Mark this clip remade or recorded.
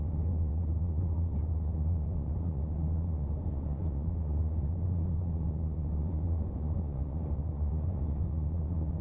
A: remade